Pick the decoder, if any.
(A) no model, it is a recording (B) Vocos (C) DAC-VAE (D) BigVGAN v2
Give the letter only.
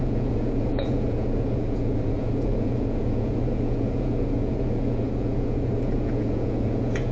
B